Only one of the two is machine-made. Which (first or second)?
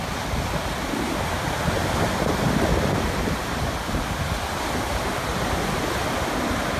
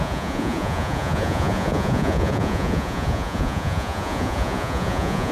second